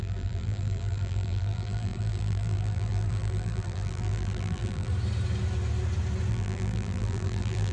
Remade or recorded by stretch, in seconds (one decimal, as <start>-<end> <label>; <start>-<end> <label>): 0.0-4.9 remade; 4.9-6.3 recorded; 6.3-7.7 remade